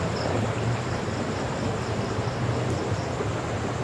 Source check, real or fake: real